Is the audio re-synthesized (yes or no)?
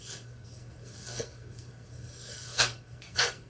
yes